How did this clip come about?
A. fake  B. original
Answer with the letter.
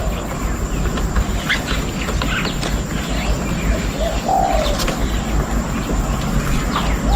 B